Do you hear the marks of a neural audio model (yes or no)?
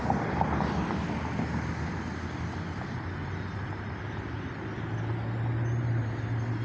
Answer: no